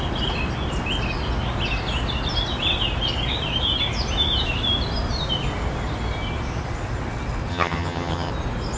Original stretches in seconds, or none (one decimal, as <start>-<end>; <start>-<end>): 0.0-7.5; 8.3-8.8